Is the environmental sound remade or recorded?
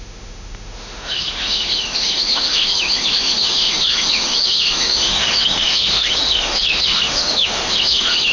remade